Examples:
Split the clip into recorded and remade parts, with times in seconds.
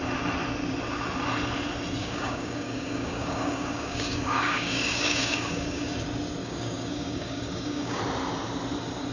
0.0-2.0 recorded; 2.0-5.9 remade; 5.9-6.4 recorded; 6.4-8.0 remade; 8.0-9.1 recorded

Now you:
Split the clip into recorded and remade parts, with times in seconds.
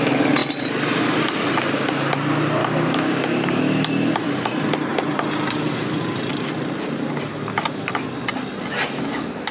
0.0-2.6 recorded; 2.6-3.6 remade; 3.6-9.5 recorded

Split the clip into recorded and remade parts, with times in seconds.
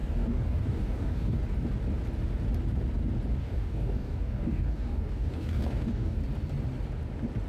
0.0-1.4 remade; 1.4-3.4 recorded; 3.4-6.2 remade; 6.2-7.5 recorded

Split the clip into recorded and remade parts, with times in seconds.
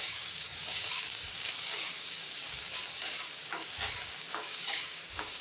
0.0-5.4 remade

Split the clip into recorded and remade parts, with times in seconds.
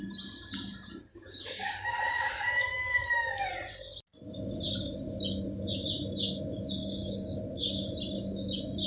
0.0-1.1 recorded; 1.1-3.5 remade; 3.5-6.8 recorded; 6.8-7.4 remade; 7.4-8.9 recorded